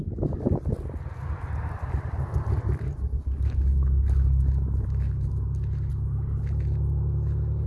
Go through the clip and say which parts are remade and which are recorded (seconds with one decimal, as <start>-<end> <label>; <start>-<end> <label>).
0.0-7.7 recorded